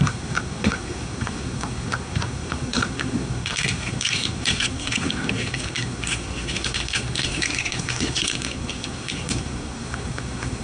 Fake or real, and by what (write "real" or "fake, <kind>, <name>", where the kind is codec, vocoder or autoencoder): fake, codec, SNAC